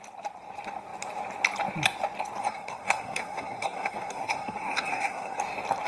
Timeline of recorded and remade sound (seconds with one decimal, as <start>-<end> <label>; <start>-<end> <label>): 0.0-2.4 recorded; 2.4-5.4 remade; 5.4-5.9 recorded